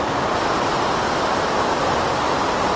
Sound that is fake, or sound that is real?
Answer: real